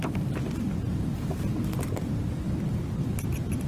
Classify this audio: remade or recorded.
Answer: recorded